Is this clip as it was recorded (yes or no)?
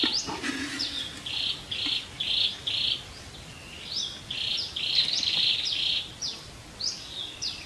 yes